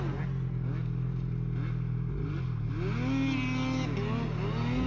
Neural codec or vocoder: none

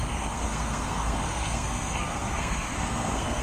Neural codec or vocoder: codec, SNAC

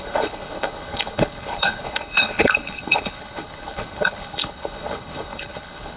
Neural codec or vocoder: codec, HILCodec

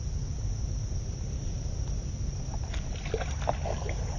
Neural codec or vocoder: none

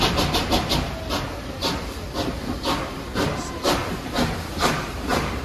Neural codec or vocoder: none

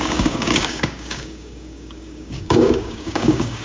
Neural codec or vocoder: codec, DAC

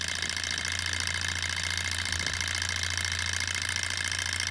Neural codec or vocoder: none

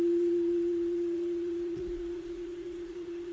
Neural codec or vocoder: vocoder, Vocos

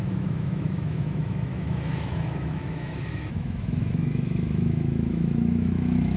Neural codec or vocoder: autoencoder, DAC-VAE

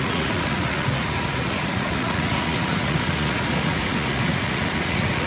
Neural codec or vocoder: vocoder, Vocos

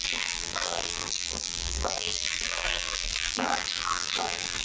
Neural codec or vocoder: vocoder, BigVGAN v2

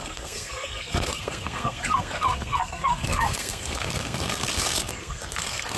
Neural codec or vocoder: codec, SNAC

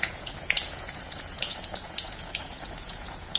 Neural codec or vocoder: vocoder, Vocos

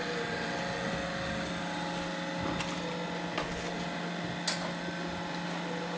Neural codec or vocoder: none